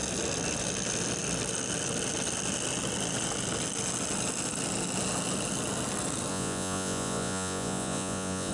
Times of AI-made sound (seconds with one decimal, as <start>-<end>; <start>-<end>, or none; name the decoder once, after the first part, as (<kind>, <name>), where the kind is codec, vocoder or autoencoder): 6.3-8.5 (vocoder, Vocos)

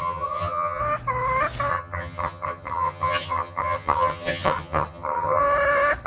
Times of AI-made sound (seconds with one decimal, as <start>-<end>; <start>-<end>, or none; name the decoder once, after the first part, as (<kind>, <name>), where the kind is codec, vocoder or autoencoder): 0.0-0.8 (vocoder, HiFi-GAN); 1.7-5.4

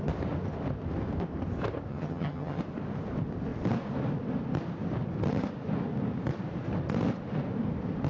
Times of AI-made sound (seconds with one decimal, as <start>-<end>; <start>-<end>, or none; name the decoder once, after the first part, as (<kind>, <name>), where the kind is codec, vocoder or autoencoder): 1.9-2.6 (vocoder, HiFi-GAN)

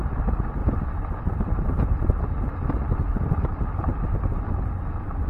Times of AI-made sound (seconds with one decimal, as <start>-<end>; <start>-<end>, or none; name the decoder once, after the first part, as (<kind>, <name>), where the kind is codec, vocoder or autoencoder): 0.6-1.4 (vocoder, BigVGAN v2)

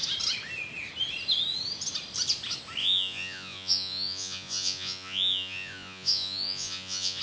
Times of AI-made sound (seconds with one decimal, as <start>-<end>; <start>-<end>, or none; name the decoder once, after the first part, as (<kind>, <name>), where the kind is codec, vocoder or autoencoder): 2.8-7.2 (vocoder, Vocos)

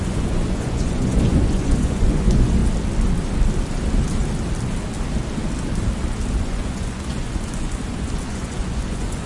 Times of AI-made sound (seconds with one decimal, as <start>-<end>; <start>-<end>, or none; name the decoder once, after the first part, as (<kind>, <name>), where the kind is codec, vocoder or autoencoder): 0.0-2.6 (vocoder, Vocos); 6.4-9.3

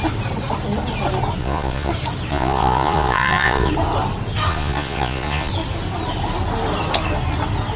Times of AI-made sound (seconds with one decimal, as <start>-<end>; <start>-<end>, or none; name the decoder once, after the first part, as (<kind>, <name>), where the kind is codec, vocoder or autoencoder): 1.4-1.9 (vocoder, Vocos); 2.3-3.7; 4.5-5.5